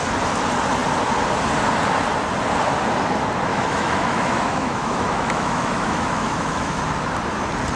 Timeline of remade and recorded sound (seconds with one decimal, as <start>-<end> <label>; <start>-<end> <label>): 0.0-3.5 recorded; 3.5-6.8 remade; 6.8-7.8 recorded

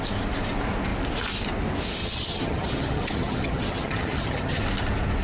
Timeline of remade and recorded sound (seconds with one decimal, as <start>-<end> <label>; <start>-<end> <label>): 0.0-2.0 recorded; 2.0-4.6 remade; 4.6-5.2 recorded

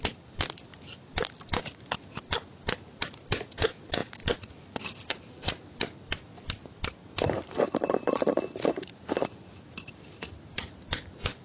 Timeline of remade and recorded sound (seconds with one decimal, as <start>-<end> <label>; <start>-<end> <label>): 0.0-11.4 recorded

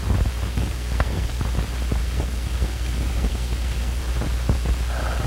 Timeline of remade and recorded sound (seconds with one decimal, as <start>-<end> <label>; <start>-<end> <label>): 0.0-0.5 recorded; 0.5-1.4 remade; 1.4-2.0 recorded; 2.0-4.0 remade; 4.0-5.3 recorded

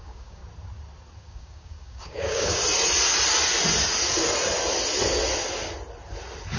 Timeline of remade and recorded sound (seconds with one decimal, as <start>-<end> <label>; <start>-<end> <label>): 0.0-0.4 remade; 0.4-1.2 recorded; 1.2-2.6 remade; 2.6-6.6 recorded

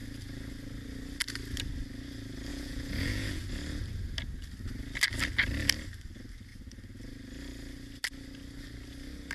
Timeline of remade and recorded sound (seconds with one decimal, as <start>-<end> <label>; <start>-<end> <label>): 0.0-2.5 recorded; 2.5-3.4 remade; 3.4-9.3 recorded

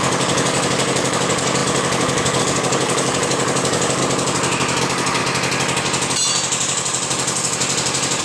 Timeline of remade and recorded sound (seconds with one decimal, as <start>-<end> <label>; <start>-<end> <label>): 0.0-4.0 remade; 4.0-4.8 recorded; 4.8-5.2 remade; 5.2-8.2 recorded